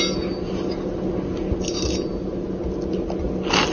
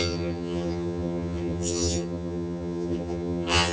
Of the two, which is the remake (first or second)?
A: second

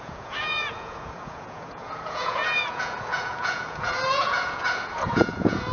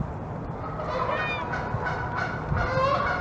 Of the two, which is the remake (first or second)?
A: first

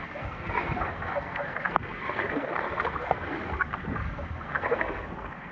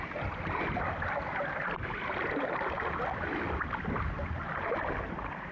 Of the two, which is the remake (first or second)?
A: first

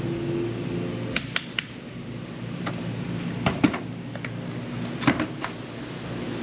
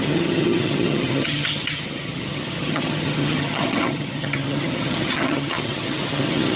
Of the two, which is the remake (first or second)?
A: second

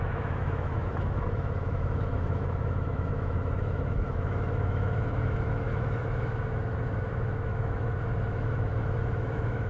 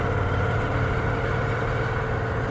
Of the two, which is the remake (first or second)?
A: first